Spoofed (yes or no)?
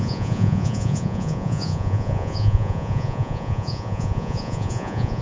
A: yes